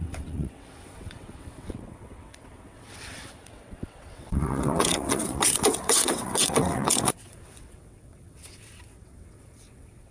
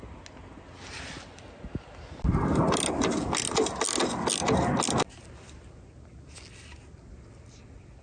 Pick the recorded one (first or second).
second